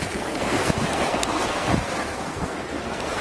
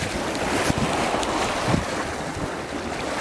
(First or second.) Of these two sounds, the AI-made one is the first